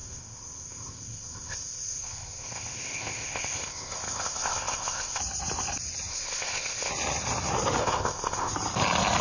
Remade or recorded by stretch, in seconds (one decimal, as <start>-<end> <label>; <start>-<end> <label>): 0.0-5.2 remade; 5.2-6.1 recorded; 6.1-6.9 remade; 6.9-7.8 recorded; 7.8-8.5 remade; 8.5-9.2 recorded